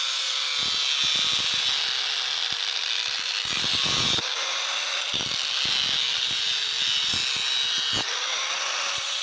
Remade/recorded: recorded